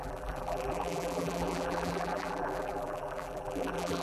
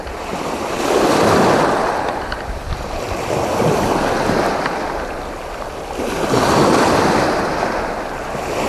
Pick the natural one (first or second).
second